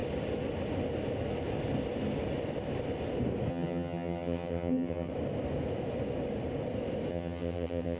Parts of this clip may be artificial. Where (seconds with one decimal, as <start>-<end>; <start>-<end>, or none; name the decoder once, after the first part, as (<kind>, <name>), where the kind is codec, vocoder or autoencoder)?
3.5-5.1 (vocoder, HiFi-GAN); 7.1-8.0